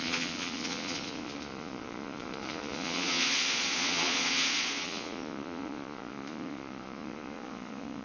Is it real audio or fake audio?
fake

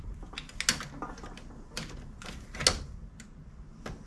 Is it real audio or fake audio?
real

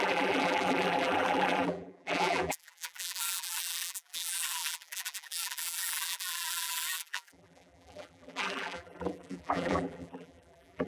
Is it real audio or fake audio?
fake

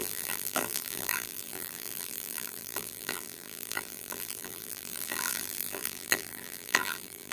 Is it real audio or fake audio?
fake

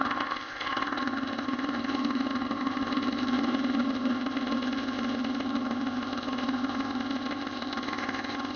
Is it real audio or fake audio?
fake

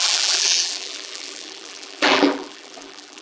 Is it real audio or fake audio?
fake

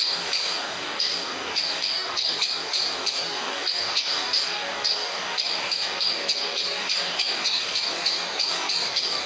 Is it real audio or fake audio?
fake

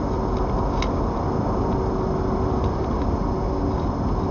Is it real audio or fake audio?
real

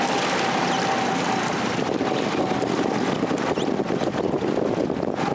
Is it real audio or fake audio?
real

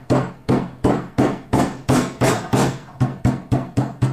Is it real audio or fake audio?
fake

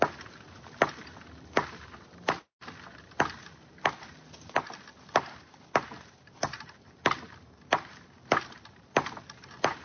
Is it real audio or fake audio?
real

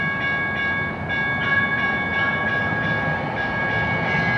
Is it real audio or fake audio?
real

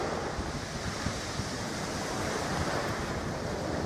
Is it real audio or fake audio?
real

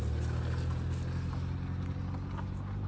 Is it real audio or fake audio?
real